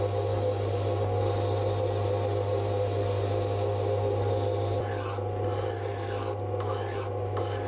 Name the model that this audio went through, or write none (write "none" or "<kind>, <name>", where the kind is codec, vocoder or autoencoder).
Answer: none